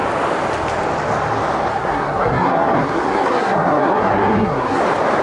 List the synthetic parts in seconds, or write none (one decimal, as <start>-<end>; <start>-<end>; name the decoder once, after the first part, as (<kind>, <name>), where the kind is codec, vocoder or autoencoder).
1.7-4.8 (codec, SNAC)